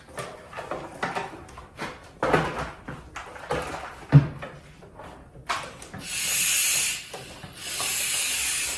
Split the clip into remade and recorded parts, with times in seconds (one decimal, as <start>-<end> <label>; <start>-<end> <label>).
0.0-7.6 recorded; 7.6-8.8 remade